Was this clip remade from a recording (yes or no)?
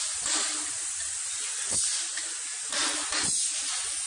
no